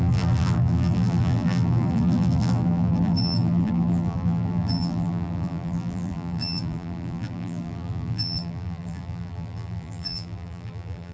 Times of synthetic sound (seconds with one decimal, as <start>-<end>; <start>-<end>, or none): 0.0-11.1